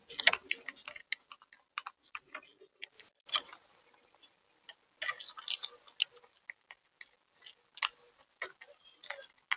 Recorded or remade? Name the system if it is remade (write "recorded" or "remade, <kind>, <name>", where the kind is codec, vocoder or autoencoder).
recorded